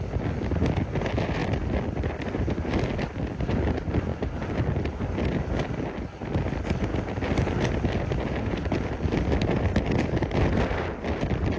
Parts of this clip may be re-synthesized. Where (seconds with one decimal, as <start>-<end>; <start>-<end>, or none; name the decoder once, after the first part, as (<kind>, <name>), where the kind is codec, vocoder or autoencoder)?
none